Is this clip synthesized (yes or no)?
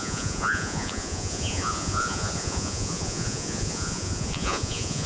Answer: yes